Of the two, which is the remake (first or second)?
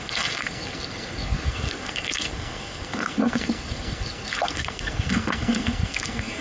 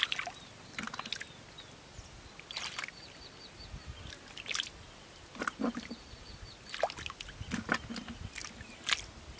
first